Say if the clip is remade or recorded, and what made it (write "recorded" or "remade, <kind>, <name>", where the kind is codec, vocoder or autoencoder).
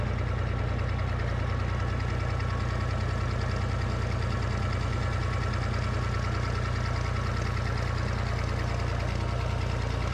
recorded